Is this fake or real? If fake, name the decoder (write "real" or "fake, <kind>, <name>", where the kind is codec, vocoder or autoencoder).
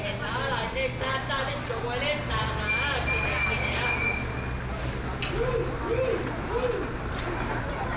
real